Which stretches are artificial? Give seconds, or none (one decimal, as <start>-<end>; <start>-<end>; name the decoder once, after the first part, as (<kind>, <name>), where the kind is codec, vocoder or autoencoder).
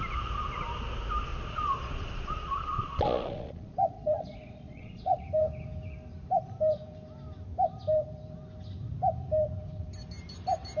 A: 1.3-5.2 (vocoder, Vocos)